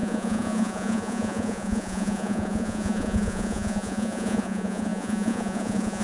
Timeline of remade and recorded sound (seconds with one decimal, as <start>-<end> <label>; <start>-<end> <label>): 0.0-6.0 remade